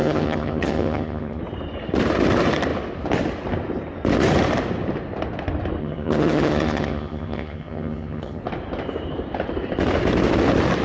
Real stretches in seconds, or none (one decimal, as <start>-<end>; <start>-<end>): 1.4-5.8; 8.4-10.8